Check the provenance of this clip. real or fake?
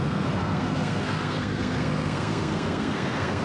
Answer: fake